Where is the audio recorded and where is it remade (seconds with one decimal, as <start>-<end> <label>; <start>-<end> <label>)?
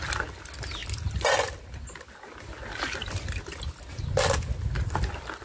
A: 0.0-5.4 recorded